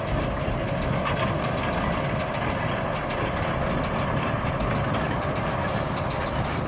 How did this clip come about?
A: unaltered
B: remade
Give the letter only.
A